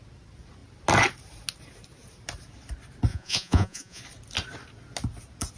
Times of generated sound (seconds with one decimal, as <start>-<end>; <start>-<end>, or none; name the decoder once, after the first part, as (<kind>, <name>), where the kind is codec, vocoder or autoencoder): 3.1-4.0 (vocoder, Vocos)